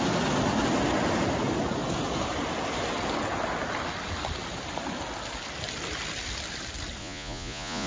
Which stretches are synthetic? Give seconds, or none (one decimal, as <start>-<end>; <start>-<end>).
7.0-7.9